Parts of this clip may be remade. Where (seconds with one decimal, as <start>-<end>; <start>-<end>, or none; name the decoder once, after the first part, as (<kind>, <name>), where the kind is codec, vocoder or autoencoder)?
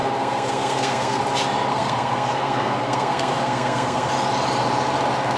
0.0-1.2 (codec, SNAC); 1.7-4.1